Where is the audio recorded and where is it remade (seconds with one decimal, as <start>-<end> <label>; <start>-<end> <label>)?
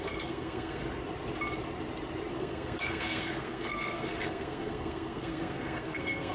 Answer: 0.0-0.8 remade; 0.8-2.3 recorded; 2.3-6.3 remade